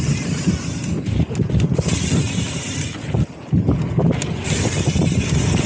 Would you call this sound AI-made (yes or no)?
no